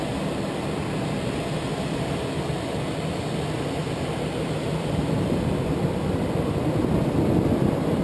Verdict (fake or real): real